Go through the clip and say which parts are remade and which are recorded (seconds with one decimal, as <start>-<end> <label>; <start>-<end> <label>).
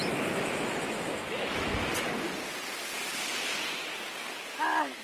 0.0-1.7 remade; 1.7-4.5 recorded; 4.5-5.0 remade